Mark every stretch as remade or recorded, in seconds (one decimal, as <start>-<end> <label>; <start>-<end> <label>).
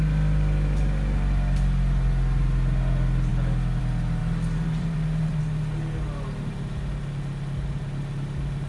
0.0-4.2 recorded; 4.2-5.4 remade; 5.4-8.7 recorded